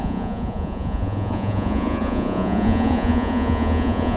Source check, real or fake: fake